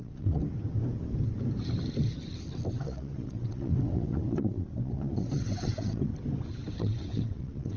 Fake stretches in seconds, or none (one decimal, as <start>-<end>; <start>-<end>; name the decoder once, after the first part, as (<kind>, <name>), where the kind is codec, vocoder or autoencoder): 0.0-0.4 (vocoder, WaveNeXt); 2.7-6.1; 6.7-7.8